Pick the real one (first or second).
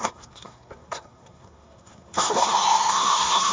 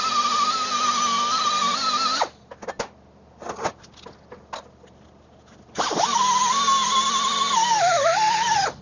second